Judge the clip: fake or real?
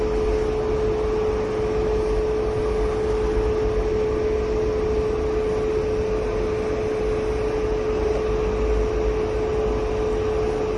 real